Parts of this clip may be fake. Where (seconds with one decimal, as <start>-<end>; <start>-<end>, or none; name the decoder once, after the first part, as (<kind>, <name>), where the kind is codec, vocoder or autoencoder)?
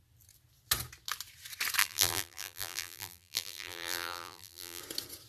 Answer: 1.8-4.8 (vocoder, BigVGAN v2)